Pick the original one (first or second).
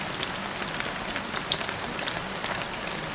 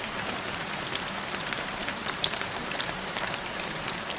first